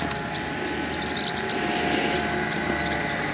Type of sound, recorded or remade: recorded